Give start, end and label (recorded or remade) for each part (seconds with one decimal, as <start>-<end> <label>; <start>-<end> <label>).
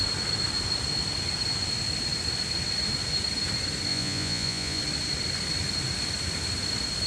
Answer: 0.0-3.9 recorded; 3.9-4.8 remade; 4.8-7.1 recorded